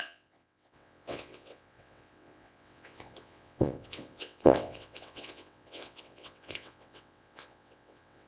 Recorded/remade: remade